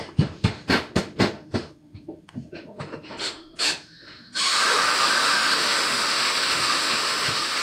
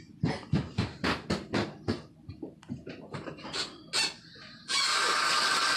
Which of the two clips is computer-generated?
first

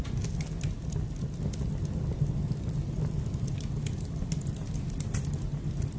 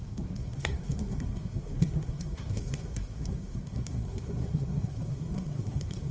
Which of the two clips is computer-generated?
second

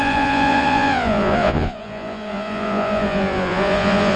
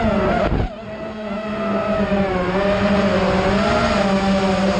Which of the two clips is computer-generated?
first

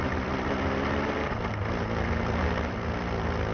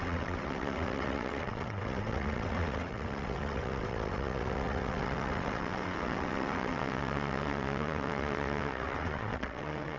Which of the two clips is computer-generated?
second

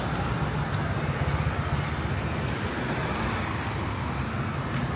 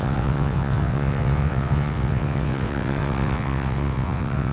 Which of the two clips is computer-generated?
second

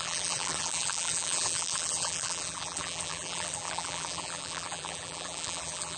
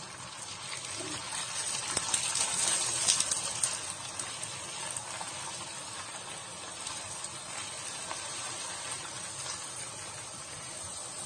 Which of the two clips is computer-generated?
first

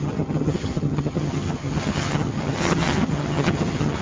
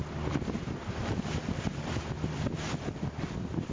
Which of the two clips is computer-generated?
first